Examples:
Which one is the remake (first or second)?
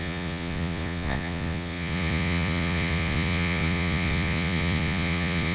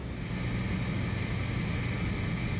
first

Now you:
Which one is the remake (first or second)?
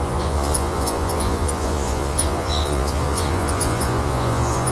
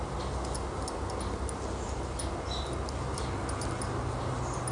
first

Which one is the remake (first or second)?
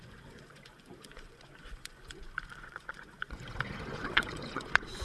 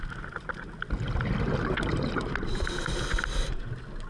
first